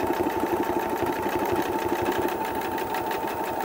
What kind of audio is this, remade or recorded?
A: recorded